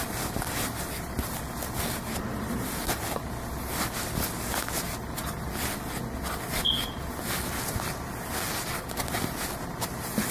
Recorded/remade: recorded